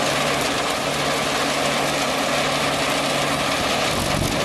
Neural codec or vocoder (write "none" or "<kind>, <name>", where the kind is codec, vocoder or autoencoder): none